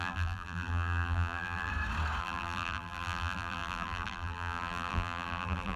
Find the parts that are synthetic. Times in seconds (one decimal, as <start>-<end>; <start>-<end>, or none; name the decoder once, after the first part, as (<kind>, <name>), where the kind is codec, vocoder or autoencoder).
0.0-1.7 (vocoder, BigVGAN v2); 2.2-5.8